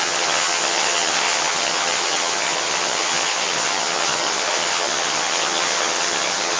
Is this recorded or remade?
remade